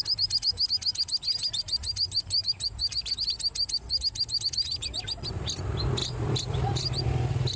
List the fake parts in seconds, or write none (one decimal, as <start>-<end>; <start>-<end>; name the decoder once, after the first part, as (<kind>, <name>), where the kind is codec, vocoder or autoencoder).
1.4-3.1 (vocoder, BigVGAN v2); 6.0-7.6